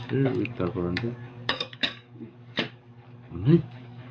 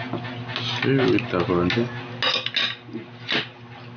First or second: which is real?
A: second